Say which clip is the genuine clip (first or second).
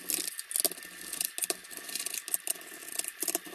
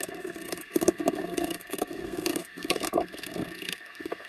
first